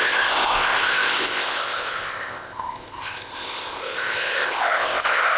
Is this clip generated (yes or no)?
yes